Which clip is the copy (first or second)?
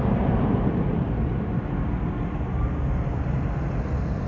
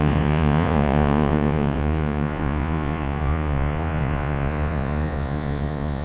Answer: second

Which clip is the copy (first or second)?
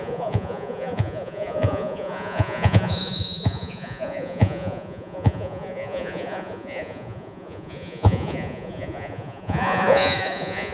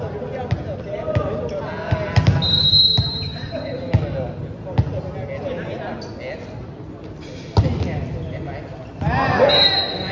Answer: first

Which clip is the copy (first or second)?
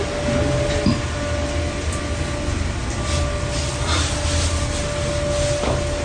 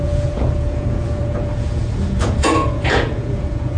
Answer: second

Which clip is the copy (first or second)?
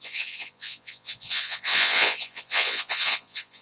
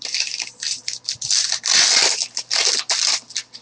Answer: first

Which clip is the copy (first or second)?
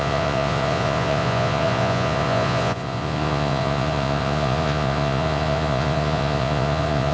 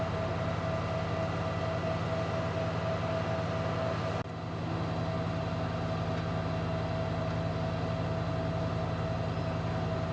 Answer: first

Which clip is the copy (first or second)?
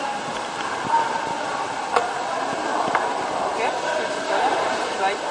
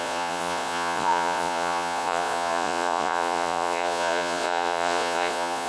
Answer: second